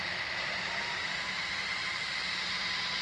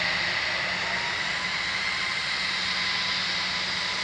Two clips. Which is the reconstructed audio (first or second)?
first